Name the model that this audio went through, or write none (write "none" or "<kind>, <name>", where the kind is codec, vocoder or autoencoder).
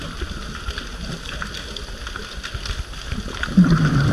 none